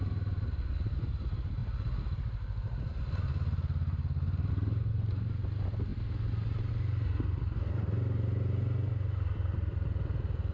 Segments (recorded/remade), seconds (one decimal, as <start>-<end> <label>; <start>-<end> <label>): 0.0-10.5 recorded